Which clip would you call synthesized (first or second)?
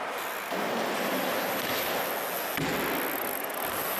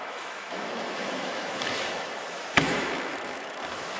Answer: second